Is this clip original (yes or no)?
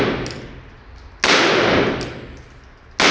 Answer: yes